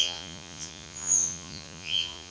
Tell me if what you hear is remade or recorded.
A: remade